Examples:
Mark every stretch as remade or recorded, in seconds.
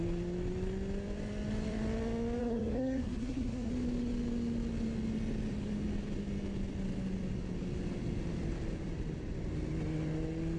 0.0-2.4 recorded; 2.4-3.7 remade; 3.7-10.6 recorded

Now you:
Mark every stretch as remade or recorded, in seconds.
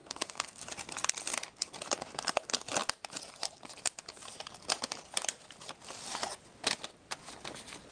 0.0-0.6 remade; 0.6-7.9 recorded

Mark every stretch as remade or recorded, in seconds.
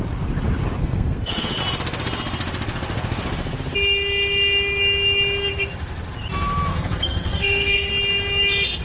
0.0-0.8 recorded; 0.8-1.6 remade; 1.6-6.7 recorded; 6.7-7.9 remade; 7.9-8.8 recorded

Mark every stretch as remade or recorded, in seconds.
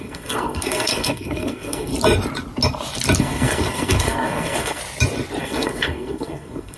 0.0-1.9 remade; 1.9-3.2 recorded; 3.2-4.8 remade; 4.8-5.4 recorded; 5.4-6.8 remade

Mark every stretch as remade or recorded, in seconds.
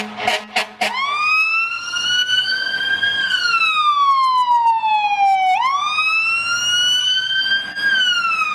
0.0-1.7 recorded; 1.7-3.6 remade; 3.6-7.0 recorded; 7.0-7.5 remade; 7.5-8.5 recorded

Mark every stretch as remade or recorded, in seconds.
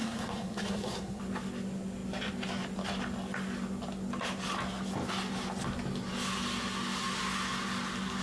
0.0-1.2 remade; 1.2-8.2 recorded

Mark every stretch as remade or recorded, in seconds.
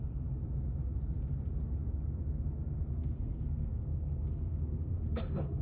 0.0-0.4 remade; 0.4-2.9 recorded; 2.9-5.6 remade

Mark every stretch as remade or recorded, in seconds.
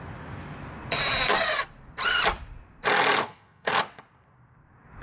0.0-3.2 recorded; 3.2-3.8 remade; 3.8-5.0 recorded